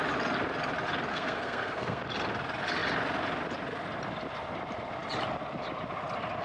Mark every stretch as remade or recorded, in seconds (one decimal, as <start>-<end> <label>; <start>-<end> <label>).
0.0-1.1 recorded; 1.1-2.0 remade; 2.0-6.4 recorded